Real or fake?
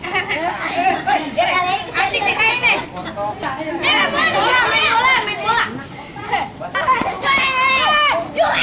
real